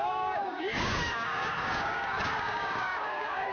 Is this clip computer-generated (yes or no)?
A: yes